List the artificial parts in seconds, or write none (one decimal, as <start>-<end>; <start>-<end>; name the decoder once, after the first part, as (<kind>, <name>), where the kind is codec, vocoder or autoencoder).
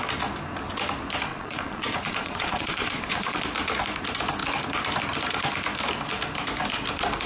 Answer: 1.3-3.4 (vocoder, Vocos)